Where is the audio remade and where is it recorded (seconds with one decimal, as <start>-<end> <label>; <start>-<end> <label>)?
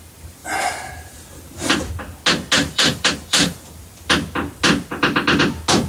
0.0-0.4 recorded; 0.4-1.9 remade; 1.9-2.6 recorded; 2.6-4.1 remade; 4.1-5.9 recorded